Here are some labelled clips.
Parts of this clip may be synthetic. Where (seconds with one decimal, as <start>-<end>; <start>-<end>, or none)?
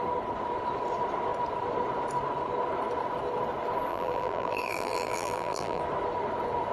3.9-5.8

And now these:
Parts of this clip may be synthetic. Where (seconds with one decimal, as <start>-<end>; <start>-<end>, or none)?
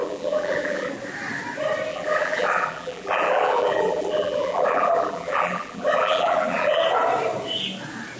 0.0-0.9; 1.9-6.8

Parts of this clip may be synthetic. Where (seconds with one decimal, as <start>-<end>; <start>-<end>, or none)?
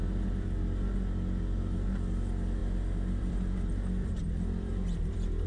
1.4-5.5